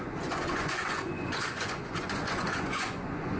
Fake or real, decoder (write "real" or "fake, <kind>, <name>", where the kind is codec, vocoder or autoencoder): fake, vocoder, Vocos